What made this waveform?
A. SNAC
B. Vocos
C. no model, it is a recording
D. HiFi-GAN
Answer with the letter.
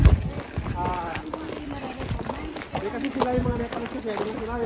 C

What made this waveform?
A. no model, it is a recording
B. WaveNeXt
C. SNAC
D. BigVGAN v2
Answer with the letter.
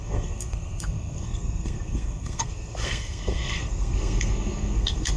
C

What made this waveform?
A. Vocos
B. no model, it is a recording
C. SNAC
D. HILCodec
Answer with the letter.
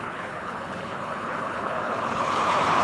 D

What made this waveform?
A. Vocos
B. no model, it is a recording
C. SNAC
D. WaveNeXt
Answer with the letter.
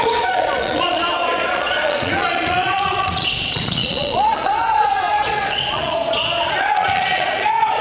A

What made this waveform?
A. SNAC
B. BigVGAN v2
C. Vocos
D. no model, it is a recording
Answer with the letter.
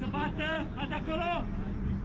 B